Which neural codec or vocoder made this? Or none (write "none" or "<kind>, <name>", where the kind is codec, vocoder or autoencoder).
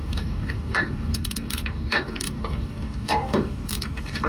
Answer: codec, DAC